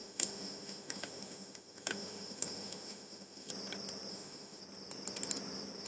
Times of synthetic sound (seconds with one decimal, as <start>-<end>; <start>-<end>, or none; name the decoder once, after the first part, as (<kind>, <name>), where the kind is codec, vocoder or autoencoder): 0.0-3.5 (autoencoder, DAC-VAE); 4.1-4.6

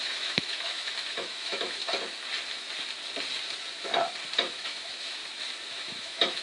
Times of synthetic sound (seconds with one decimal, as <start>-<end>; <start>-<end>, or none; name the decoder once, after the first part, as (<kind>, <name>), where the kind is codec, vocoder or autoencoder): 0.0-1.8 (autoencoder, DAC-VAE); 4.5-5.2; 5.7-6.4

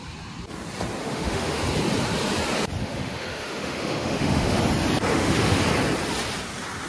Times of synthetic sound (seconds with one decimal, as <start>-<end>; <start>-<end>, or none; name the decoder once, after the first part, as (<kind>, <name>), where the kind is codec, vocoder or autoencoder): 1.0-1.6 (autoencoder, DAC-VAE); 2.8-4.6; 5.1-5.6

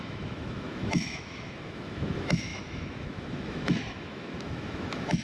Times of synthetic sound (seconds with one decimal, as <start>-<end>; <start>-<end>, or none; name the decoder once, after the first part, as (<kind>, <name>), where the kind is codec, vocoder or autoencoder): 0.0-5.2 (autoencoder, DAC-VAE)